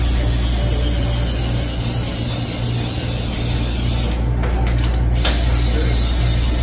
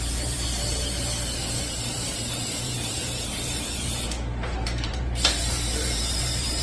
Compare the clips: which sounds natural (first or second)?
first